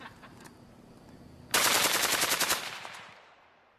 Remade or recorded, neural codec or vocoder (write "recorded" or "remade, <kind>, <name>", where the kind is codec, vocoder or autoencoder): remade, vocoder, BigVGAN v2